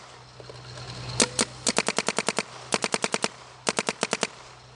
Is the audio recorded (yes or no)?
yes